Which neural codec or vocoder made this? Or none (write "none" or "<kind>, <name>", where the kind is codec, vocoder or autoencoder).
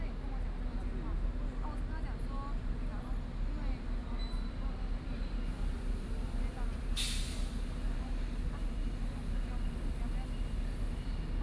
none